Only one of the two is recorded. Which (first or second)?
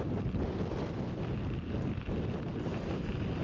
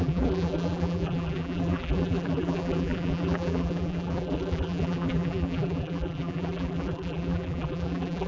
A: first